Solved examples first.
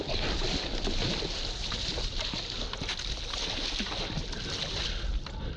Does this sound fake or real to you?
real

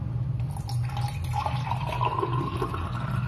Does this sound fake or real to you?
real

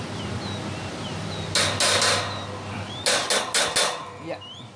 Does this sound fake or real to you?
real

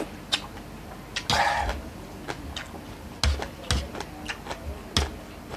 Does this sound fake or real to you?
real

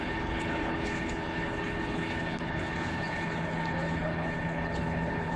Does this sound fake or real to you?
fake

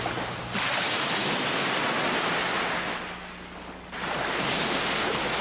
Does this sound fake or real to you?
real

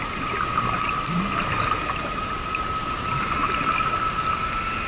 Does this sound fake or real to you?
real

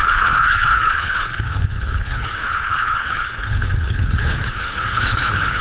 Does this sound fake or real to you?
fake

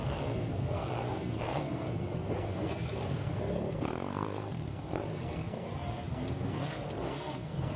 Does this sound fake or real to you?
fake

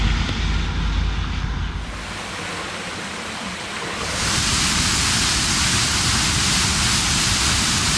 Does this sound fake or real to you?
real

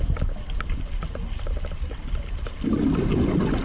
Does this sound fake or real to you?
real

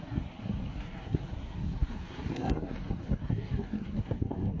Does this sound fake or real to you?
fake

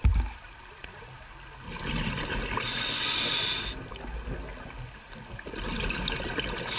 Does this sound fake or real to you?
real